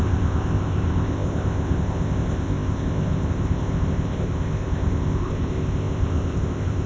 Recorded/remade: remade